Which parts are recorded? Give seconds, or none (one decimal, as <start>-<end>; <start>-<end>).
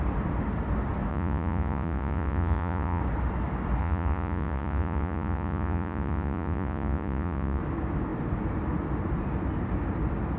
0.0-1.1; 3.0-3.8; 7.6-10.4